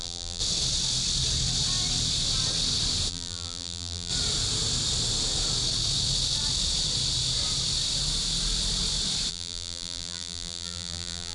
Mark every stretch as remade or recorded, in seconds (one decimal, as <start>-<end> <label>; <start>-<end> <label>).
0.0-0.4 remade; 0.4-3.1 recorded; 3.1-4.1 remade; 4.1-9.3 recorded; 9.3-11.3 remade